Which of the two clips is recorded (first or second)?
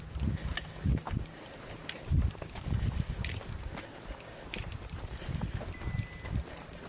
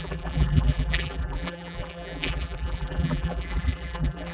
first